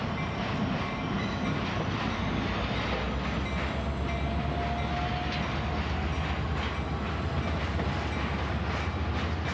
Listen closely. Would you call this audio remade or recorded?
recorded